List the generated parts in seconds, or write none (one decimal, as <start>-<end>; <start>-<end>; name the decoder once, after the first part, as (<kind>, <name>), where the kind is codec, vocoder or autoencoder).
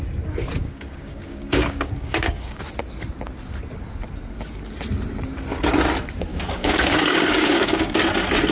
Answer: 0.6-2.6 (codec, DAC); 6.3-7.9